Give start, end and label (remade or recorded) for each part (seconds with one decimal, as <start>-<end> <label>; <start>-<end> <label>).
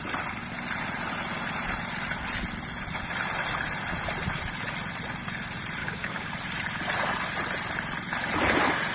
0.0-5.8 recorded; 5.8-6.3 remade; 6.3-8.9 recorded